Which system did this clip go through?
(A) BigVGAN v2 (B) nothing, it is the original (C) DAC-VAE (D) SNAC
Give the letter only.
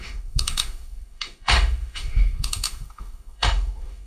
C